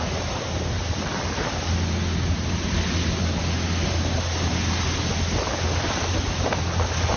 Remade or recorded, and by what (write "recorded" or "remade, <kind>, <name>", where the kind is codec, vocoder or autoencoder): recorded